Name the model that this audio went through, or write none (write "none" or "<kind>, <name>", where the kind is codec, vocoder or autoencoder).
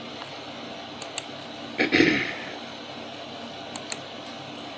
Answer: none